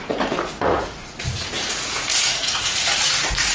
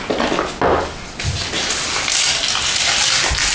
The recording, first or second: second